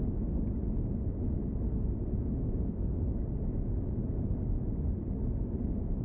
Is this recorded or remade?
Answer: recorded